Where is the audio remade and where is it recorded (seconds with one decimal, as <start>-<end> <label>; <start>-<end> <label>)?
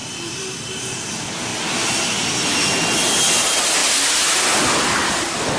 0.0-1.5 remade; 1.5-3.4 recorded; 3.4-5.6 remade